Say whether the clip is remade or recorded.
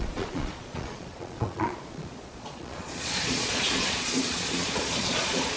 remade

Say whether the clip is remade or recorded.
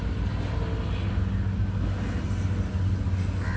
recorded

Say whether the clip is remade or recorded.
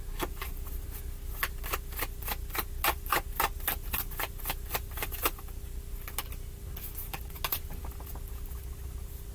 recorded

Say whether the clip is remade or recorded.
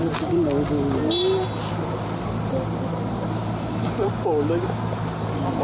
recorded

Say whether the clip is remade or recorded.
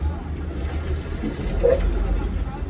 recorded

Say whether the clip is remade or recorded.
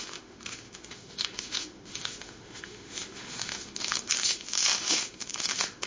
remade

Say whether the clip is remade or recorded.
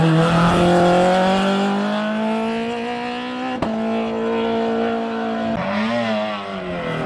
recorded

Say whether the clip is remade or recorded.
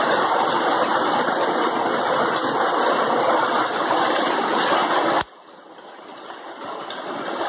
recorded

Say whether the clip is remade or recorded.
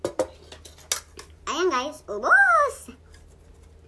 recorded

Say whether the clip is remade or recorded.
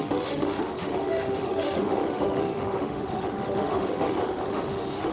remade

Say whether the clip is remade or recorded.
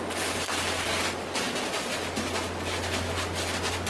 recorded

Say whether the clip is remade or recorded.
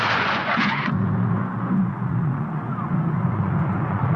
remade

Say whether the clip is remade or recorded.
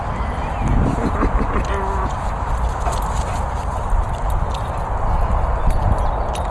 recorded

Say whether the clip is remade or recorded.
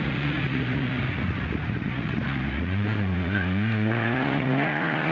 remade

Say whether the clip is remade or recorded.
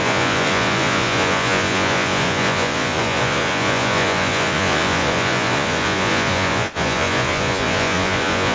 remade